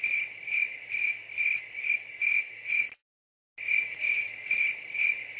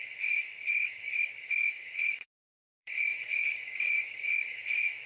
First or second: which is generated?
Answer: second